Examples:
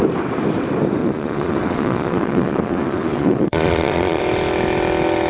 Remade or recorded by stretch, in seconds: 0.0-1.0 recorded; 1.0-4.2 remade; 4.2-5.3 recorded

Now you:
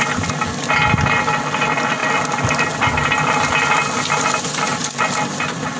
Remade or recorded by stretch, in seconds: 0.0-4.7 recorded; 4.7-5.8 remade

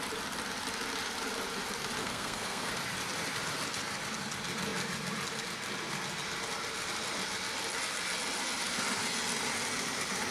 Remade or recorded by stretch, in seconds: 0.0-2.0 recorded; 2.0-2.7 remade; 2.7-10.3 recorded

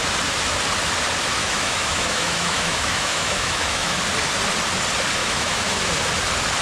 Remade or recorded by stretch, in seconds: 0.0-1.4 recorded; 1.4-4.0 remade; 4.0-5.2 recorded; 5.2-5.9 remade; 5.9-6.6 recorded

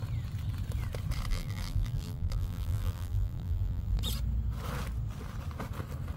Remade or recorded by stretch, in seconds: 0.0-1.3 recorded; 1.3-4.0 remade; 4.0-6.2 recorded

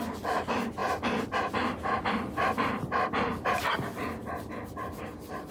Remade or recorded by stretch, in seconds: 0.0-5.5 recorded